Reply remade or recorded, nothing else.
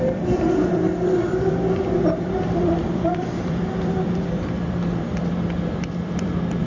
remade